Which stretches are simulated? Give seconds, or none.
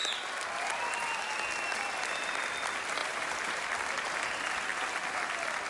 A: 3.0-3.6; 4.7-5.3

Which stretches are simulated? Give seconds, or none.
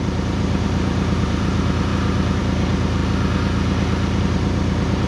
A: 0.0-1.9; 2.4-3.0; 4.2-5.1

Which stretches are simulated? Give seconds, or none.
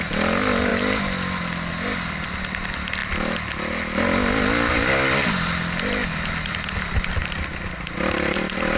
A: none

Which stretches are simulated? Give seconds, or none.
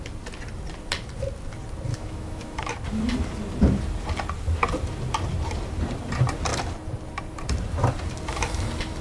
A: 1.9-2.7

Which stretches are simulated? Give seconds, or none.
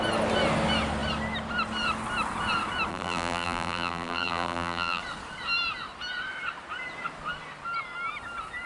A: 2.9-5.0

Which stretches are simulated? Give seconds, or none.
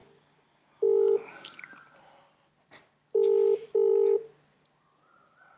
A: none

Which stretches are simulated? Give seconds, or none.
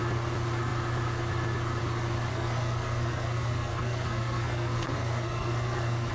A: 2.3-6.1